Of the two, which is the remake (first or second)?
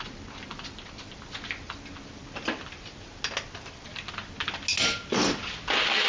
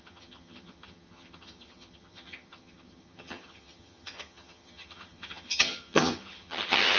second